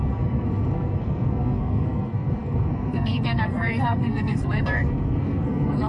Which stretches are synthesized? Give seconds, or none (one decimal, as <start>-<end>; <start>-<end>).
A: 0.0-5.9